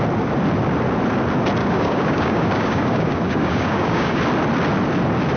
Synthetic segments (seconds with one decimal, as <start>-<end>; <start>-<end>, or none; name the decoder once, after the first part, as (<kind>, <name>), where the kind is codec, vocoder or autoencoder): 1.6-4.2 (codec, DAC)